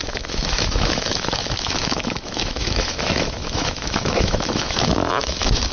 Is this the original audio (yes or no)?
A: no